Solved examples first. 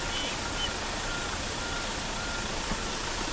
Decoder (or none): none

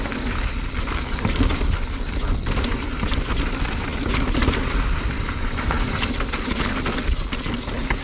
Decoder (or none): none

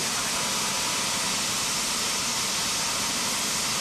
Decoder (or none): none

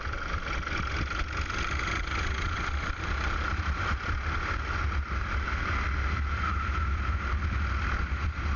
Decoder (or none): none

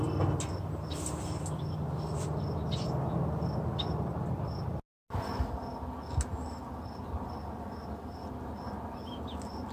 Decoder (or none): none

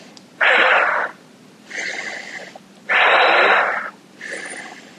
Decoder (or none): none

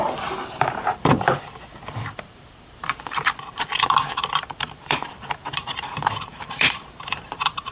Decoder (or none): vocoder, BigVGAN v2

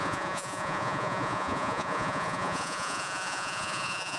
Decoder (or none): vocoder, Vocos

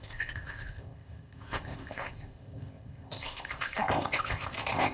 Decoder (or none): codec, ZipCodec